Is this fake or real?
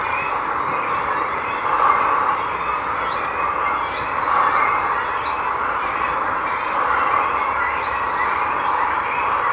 real